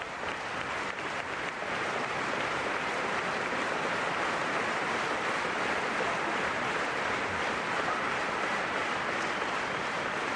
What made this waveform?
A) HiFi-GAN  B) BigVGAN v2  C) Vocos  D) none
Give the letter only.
D